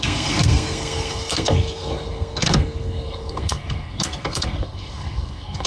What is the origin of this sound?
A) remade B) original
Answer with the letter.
A